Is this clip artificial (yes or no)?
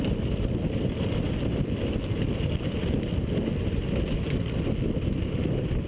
no